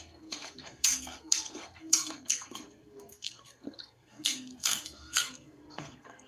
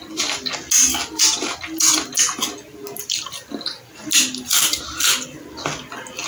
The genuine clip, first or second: second